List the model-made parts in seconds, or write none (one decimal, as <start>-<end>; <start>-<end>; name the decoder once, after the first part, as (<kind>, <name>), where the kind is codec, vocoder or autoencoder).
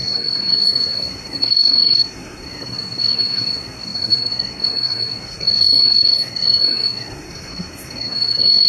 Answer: 0.0-8.7 (codec, SNAC)